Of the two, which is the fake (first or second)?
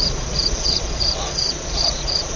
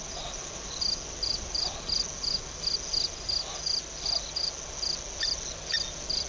first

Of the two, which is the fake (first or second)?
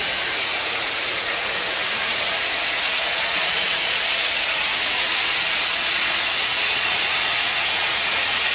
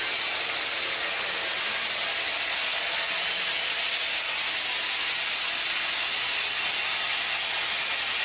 first